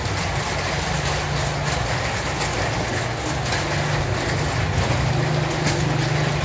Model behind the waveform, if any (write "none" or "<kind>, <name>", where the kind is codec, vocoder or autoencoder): none